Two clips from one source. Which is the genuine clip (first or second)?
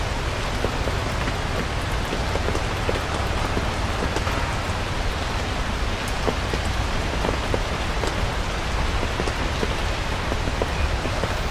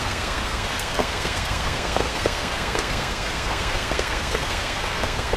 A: first